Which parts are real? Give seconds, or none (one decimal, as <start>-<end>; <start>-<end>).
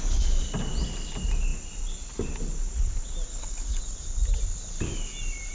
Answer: 0.0-3.3; 3.8-5.5